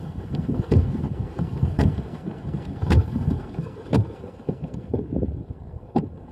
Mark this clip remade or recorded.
remade